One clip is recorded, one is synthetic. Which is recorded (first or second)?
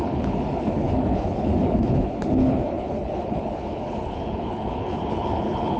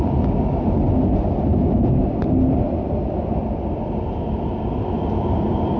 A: second